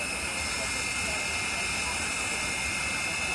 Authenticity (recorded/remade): recorded